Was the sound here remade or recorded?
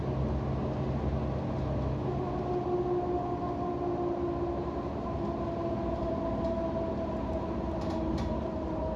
recorded